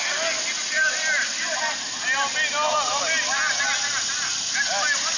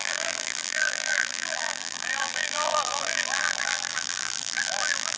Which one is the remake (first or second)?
second